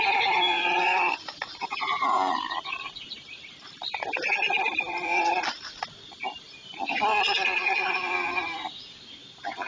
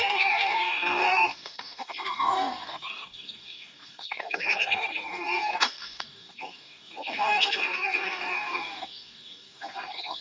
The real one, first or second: first